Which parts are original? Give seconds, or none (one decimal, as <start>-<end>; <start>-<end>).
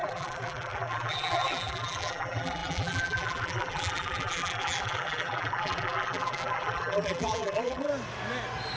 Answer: 7.9-8.8